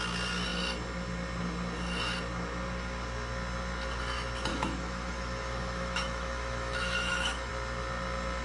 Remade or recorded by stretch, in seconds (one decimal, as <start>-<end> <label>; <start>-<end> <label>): 0.0-4.5 recorded; 4.5-7.5 remade; 7.5-8.4 recorded